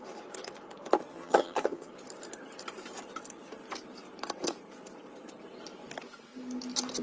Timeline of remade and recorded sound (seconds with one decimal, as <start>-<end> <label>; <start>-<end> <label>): 0.0-1.1 recorded; 1.1-1.9 remade; 1.9-7.0 recorded